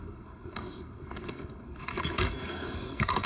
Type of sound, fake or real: fake